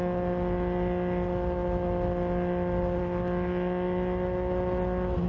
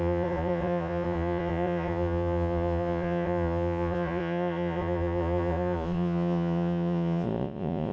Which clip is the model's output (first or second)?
second